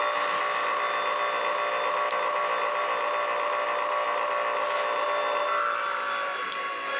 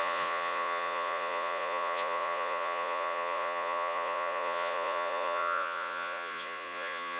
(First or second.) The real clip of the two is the first